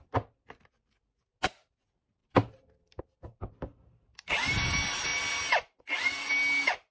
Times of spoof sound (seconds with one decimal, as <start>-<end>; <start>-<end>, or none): none